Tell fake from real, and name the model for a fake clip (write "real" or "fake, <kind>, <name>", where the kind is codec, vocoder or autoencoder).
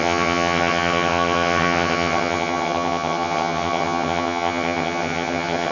fake, vocoder, HiFi-GAN